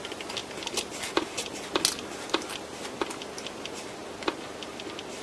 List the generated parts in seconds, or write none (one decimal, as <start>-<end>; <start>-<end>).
none